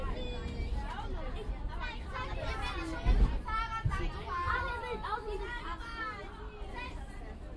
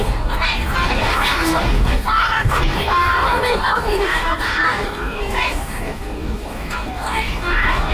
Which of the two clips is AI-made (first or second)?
second